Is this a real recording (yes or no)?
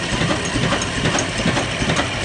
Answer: yes